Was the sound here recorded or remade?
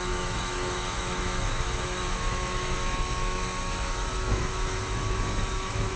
remade